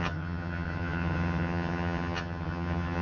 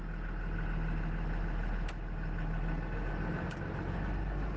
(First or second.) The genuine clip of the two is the second